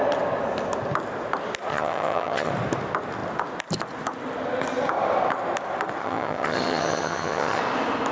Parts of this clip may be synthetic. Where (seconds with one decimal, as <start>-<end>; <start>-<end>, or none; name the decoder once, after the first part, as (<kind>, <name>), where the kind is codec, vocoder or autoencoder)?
1.7-2.5 (vocoder, HiFi-GAN); 6.0-7.6